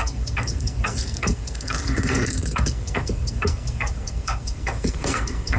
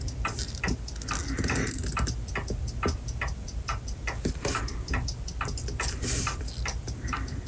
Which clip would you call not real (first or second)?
first